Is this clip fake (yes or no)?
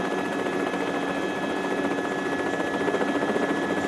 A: no